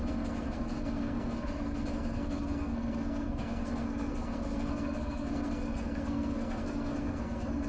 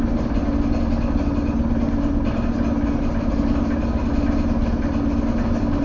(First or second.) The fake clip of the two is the first